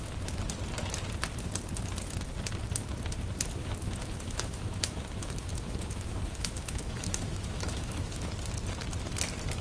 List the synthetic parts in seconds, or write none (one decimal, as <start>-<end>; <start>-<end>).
3.6-8.3